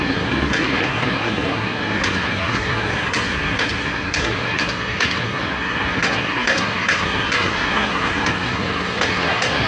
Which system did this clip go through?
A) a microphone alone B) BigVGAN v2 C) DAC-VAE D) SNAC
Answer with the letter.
D